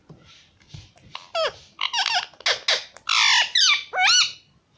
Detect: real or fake real